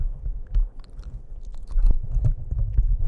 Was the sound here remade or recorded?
recorded